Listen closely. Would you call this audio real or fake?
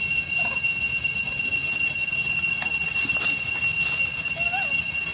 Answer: real